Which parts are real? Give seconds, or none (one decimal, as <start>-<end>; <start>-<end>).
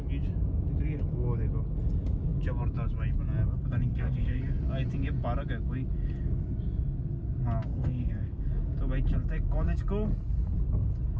0.0-3.9; 4.4-7.7; 8.4-11.2